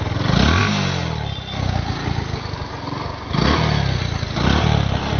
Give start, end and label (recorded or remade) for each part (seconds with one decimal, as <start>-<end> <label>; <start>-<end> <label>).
0.0-5.2 recorded